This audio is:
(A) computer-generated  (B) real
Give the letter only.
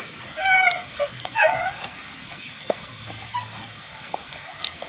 A